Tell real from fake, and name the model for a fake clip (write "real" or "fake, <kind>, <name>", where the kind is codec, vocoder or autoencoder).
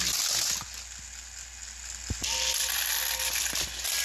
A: real